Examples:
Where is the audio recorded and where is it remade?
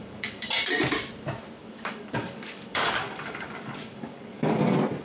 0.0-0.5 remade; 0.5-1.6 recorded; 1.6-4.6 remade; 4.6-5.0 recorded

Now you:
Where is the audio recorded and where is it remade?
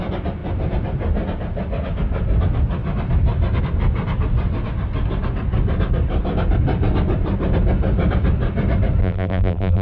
0.0-9.0 recorded; 9.0-9.8 remade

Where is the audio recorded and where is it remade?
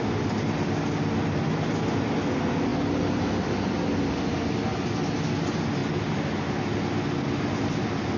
0.0-8.2 recorded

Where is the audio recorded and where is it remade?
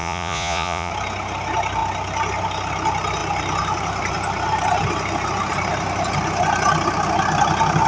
0.0-0.9 remade; 0.9-7.9 recorded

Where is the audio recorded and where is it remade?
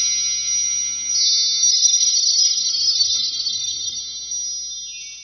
0.0-1.7 recorded; 1.7-4.0 remade; 4.0-5.2 recorded